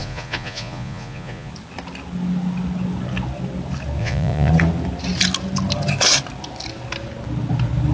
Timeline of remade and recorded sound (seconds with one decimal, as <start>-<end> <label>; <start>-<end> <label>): 0.0-1.5 remade; 1.5-4.0 recorded; 4.0-4.5 remade; 4.5-7.9 recorded